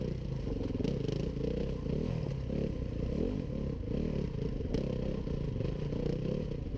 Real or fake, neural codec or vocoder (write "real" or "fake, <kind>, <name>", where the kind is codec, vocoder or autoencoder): real